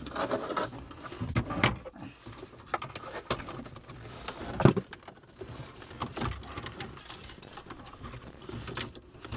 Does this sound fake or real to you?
real